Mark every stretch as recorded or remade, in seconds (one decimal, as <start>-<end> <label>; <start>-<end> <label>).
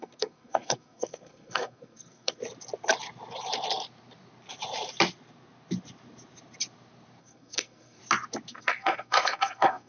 0.0-2.4 remade; 2.4-7.2 recorded; 7.2-8.0 remade; 8.0-8.5 recorded; 8.5-9.9 remade